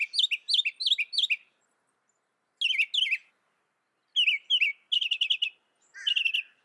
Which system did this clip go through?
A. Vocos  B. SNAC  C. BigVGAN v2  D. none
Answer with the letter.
D